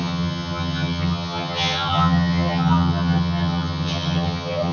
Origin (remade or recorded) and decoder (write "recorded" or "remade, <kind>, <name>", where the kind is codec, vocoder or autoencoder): remade, vocoder, HiFi-GAN